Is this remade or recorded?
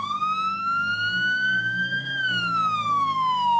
remade